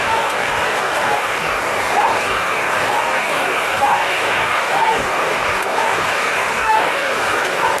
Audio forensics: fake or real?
fake